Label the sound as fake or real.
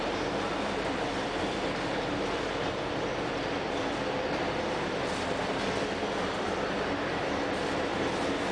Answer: fake